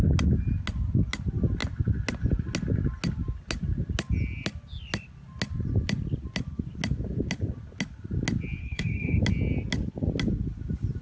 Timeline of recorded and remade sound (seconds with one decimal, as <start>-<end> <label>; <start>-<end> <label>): 0.0-8.6 recorded; 8.6-9.2 remade; 9.2-11.0 recorded